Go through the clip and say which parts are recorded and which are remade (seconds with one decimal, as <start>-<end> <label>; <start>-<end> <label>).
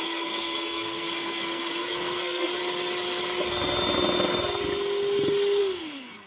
0.0-2.5 remade; 2.5-5.6 recorded; 5.6-6.3 remade